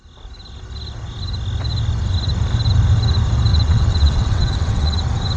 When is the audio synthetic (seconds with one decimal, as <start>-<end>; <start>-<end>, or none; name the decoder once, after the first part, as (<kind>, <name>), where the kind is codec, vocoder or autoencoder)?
3.5-5.0 (vocoder, WaveNeXt)